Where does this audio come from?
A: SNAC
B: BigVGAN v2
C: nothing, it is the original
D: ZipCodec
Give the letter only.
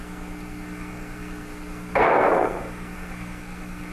A